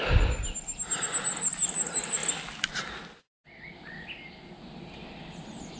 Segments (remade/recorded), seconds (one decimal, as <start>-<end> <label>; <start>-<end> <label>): 0.0-5.8 recorded